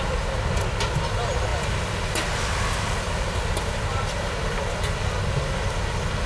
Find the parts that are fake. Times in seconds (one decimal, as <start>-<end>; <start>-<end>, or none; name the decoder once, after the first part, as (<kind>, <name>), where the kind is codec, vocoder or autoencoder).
none